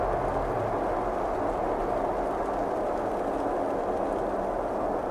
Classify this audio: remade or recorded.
recorded